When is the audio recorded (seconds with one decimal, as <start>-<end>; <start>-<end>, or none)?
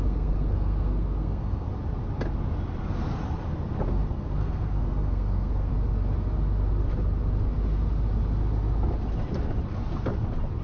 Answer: 1.7-4.1; 5.7-10.6